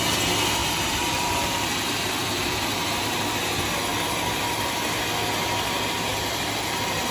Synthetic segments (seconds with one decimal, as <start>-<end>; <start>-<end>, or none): 0.6-3.4; 3.9-4.8; 6.1-7.1